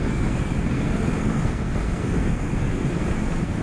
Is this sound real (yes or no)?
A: no